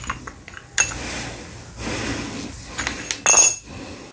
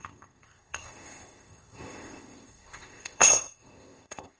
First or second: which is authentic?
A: first